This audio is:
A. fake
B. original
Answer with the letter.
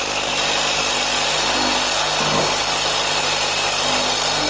B